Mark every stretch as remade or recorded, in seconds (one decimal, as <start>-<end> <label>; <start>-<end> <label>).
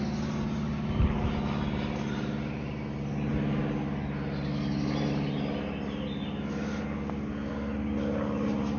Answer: 0.0-8.8 recorded